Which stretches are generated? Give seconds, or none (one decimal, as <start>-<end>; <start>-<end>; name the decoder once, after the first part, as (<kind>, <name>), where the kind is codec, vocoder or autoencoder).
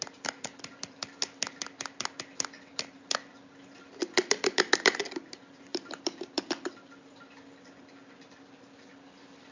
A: none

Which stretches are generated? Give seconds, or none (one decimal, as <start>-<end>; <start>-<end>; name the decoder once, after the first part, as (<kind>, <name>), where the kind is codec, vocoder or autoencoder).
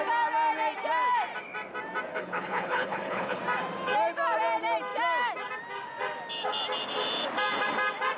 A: 2.1-3.4 (codec, HILCodec)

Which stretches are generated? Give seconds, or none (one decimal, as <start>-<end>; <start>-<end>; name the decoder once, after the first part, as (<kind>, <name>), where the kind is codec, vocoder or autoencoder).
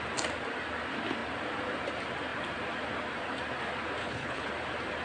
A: 4.0-4.5 (codec, HILCodec)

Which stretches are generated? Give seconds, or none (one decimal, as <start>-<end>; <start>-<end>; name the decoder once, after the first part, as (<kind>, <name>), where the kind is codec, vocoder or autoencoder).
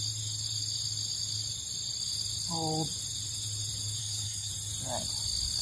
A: 4.0-4.5 (codec, HILCodec)